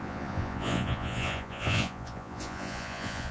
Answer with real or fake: fake